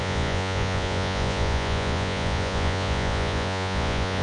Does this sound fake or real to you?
fake